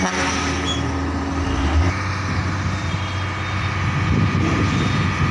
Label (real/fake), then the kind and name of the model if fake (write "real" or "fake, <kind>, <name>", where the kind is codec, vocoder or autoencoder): real